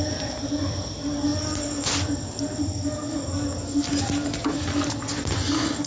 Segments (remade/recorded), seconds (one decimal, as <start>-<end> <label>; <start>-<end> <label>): 0.0-5.9 recorded